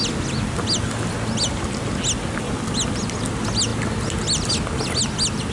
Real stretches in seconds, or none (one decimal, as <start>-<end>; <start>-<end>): 0.0-5.5

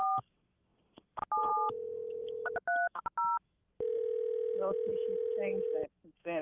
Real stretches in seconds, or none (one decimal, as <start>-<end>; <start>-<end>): 0.7-1.4